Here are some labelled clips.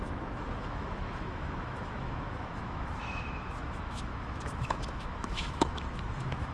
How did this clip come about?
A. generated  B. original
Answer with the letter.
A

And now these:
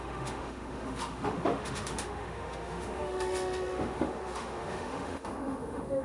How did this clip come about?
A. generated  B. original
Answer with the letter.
A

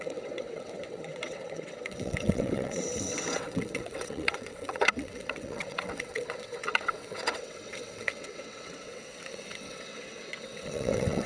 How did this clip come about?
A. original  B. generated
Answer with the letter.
B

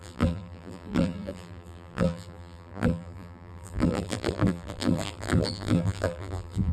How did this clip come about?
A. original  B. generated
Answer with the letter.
B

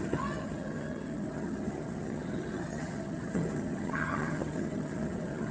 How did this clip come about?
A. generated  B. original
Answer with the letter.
A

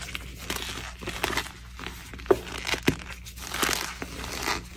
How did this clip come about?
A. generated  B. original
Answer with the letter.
B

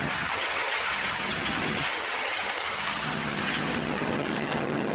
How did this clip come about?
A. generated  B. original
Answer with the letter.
A